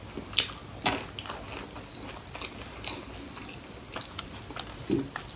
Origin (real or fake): real